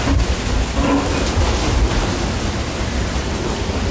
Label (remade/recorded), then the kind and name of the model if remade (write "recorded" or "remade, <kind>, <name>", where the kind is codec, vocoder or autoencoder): recorded